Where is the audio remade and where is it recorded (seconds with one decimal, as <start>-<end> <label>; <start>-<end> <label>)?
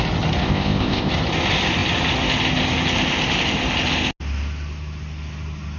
0.0-0.4 recorded; 0.4-1.1 remade; 1.1-5.8 recorded